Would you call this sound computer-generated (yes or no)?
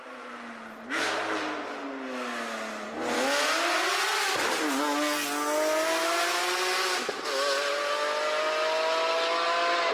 no